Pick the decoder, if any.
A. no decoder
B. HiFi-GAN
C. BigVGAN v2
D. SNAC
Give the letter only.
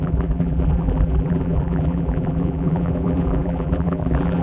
C